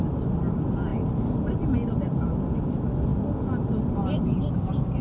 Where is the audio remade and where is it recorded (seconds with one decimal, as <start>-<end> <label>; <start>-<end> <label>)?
0.0-5.0 recorded